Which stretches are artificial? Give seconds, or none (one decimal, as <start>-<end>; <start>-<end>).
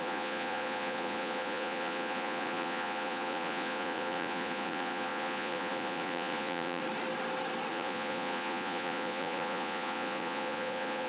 0.0-6.8; 7.7-11.1